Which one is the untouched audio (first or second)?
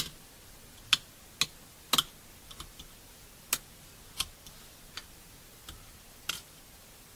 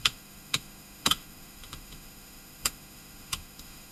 first